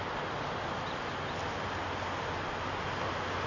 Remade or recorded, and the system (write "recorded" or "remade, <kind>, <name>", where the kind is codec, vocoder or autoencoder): recorded